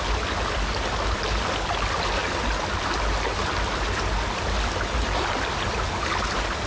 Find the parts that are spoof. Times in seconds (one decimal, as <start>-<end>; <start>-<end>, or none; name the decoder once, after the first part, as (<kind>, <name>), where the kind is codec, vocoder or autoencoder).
none